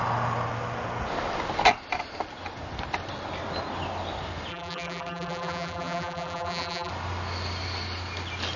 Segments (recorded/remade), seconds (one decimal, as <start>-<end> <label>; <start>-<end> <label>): 0.0-4.5 recorded; 4.5-6.9 remade; 6.9-8.6 recorded